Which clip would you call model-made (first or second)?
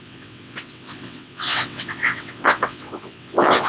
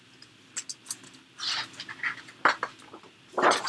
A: first